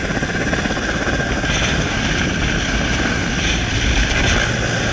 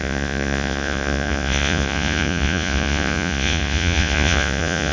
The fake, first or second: second